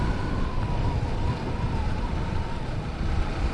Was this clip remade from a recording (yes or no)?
no